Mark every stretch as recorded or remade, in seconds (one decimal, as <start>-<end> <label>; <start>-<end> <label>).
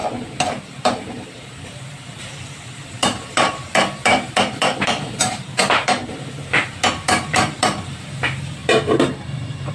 0.0-0.6 recorded; 0.6-9.7 remade